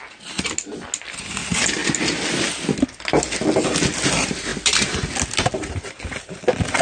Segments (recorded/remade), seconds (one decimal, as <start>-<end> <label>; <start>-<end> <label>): 0.0-6.8 recorded